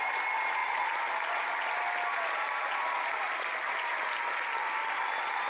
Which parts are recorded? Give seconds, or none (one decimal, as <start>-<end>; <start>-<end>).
0.0-5.5